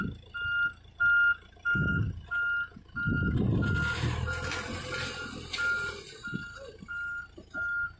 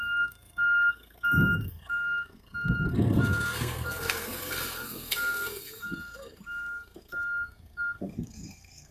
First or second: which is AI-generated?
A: second